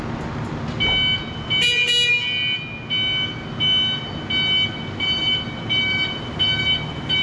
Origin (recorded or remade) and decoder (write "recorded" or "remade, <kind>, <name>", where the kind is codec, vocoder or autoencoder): recorded